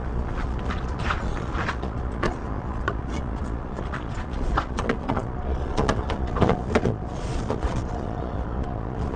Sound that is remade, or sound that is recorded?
remade